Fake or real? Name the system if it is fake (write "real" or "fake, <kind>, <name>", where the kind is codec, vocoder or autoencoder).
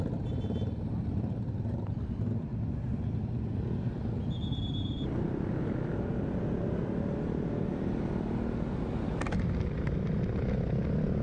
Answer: real